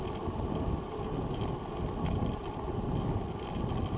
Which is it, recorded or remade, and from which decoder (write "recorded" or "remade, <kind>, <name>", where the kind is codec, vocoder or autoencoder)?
remade, vocoder, BigVGAN v2